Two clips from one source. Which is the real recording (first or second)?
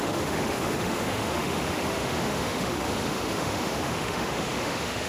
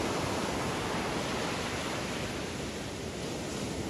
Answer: second